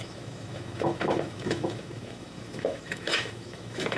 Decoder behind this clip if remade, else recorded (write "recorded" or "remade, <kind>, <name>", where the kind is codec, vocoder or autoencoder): remade, autoencoder, DAC-VAE